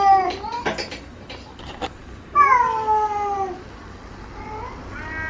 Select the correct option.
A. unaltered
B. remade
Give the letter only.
A